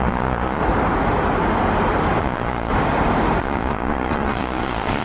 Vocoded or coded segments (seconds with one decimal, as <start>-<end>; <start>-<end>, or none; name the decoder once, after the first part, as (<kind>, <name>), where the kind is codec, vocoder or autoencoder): 0.0-0.6 (vocoder, Vocos); 2.2-2.7; 3.4-5.0